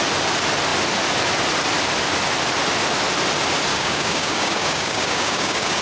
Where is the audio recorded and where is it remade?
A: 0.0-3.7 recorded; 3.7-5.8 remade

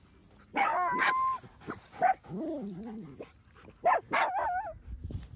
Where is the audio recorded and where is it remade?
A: 0.0-5.4 recorded